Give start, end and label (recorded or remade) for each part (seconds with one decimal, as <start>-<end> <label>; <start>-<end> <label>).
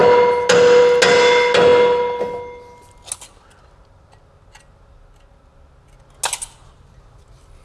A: 0.0-7.6 recorded